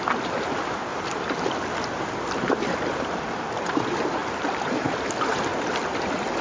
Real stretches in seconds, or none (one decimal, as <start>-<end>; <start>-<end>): 0.0-0.9; 3.5-4.2; 4.8-5.5